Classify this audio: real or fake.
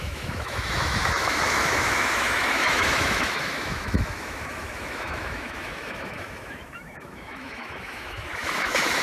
fake